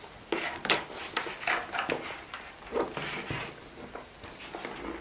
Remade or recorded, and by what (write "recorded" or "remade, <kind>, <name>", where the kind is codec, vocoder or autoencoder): recorded